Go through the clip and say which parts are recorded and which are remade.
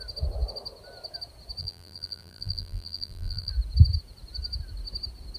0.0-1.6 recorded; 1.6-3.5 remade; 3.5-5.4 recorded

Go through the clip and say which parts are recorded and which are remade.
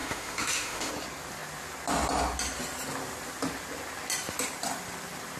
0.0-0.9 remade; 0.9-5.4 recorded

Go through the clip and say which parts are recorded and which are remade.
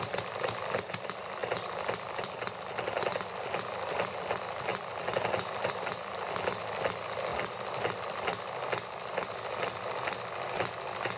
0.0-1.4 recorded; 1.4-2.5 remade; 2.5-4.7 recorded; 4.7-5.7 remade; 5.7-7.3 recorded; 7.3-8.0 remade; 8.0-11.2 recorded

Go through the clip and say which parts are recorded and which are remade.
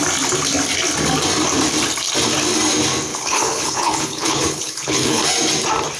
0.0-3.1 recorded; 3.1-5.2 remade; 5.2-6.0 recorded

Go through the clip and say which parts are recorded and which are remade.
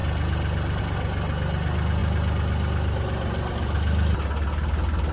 0.0-5.1 recorded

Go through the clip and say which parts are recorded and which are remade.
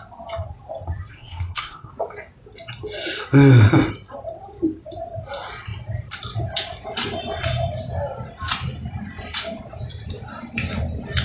0.0-1.1 recorded; 1.1-1.9 remade; 1.9-11.2 recorded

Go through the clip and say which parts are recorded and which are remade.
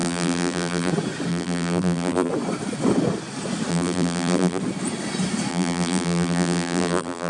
0.0-0.9 remade; 0.9-1.3 recorded; 1.3-2.3 remade; 2.3-3.7 recorded; 3.7-4.6 remade; 4.6-5.5 recorded; 5.5-7.3 remade